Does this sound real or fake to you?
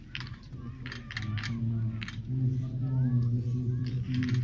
real